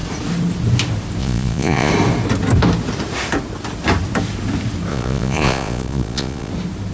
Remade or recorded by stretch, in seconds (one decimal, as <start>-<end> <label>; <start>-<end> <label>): 0.0-1.2 recorded; 1.2-1.9 remade; 1.9-4.9 recorded; 4.9-6.5 remade; 6.5-6.9 recorded

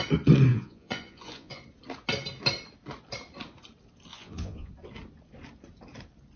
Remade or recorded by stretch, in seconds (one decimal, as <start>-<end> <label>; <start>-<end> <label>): 0.0-0.5 recorded; 0.5-1.6 remade; 1.6-4.1 recorded; 4.1-4.7 remade; 4.7-6.4 recorded

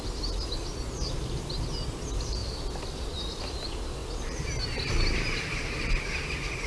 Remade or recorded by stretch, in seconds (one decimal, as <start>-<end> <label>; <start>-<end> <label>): 0.0-6.7 recorded

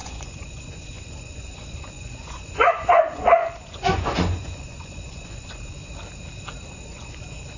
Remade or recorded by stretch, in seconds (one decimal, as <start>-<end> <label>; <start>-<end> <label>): 0.0-5.8 remade; 5.8-6.7 recorded; 6.7-7.6 remade